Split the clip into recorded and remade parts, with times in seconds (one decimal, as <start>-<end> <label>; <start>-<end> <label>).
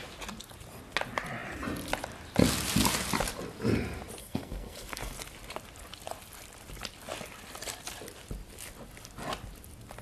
0.0-4.2 recorded; 4.2-5.1 remade; 5.1-10.0 recorded